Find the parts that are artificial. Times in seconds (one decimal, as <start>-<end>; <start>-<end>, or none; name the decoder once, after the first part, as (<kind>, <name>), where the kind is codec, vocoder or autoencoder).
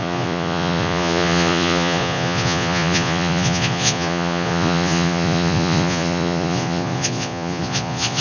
0.0-8.2 (vocoder, Vocos)